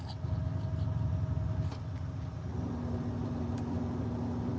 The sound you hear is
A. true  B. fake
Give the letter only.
A